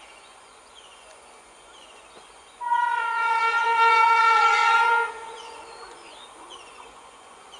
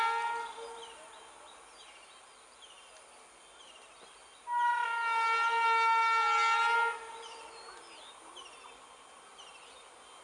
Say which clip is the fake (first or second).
first